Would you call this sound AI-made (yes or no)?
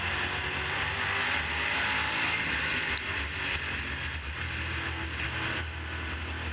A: no